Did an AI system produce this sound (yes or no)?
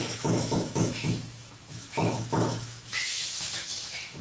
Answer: yes